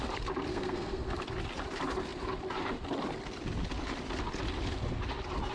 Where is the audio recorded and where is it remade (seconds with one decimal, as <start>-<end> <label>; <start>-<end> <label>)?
0.0-0.5 recorded; 0.5-1.1 remade; 1.1-5.5 recorded